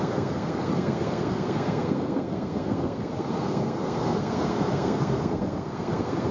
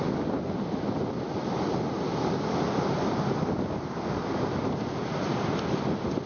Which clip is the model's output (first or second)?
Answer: first